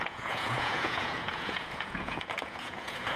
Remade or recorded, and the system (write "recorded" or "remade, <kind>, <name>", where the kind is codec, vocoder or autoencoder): remade, vocoder, Vocos